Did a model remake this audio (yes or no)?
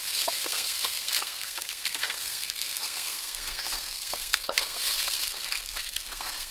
yes